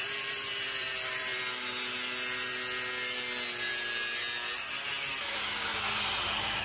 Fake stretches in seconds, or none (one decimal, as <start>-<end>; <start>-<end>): 0.0-1.3; 5.3-5.7